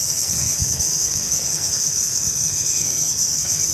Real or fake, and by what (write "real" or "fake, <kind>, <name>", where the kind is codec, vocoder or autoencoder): fake, codec, SNAC